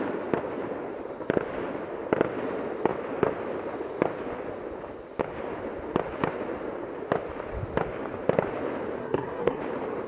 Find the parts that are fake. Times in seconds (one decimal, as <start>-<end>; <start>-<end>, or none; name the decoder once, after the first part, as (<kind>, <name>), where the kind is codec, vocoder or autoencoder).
9.0-9.6 (codec, SNAC)